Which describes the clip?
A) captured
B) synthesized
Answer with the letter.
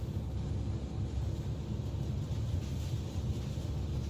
A